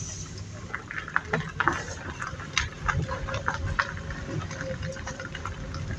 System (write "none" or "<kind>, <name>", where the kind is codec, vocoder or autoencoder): none